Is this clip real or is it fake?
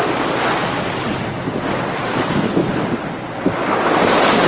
real